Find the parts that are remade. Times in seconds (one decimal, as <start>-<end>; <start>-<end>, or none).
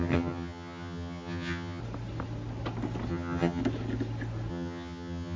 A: 0.0-1.8; 3.1-3.6; 4.5-5.4